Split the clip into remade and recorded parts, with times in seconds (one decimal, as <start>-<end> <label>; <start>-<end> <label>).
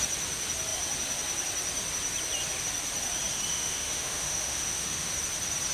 0.0-3.5 recorded; 3.5-5.1 remade; 5.1-5.7 recorded